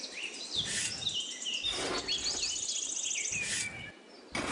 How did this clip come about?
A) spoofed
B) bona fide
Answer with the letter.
B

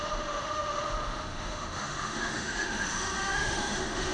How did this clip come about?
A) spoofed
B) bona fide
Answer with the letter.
A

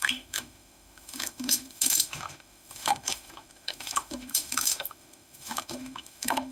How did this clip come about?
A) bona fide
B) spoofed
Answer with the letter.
B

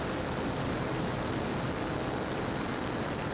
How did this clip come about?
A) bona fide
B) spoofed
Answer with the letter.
A